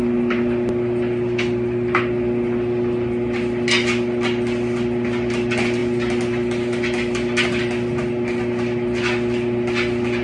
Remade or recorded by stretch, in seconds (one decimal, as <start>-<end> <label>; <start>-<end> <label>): 0.0-10.2 recorded